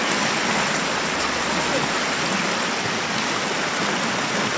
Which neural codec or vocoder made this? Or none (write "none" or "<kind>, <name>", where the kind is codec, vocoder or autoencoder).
none